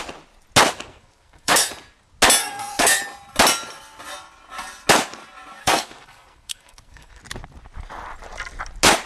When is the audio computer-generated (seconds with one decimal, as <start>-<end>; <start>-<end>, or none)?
0.9-1.7; 2.4-3.0; 5.6-7.2